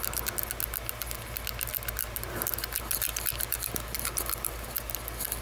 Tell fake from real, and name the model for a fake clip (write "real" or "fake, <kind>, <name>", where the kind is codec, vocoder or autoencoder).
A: real